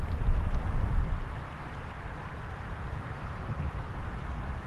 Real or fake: fake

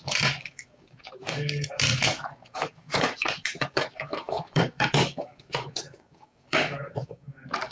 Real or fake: fake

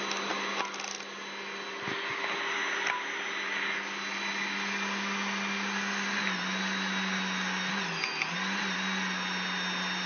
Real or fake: real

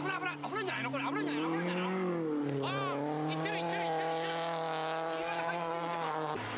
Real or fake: real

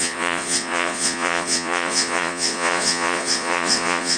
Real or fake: fake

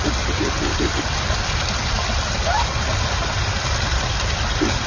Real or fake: real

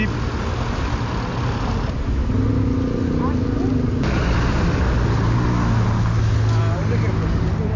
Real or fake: real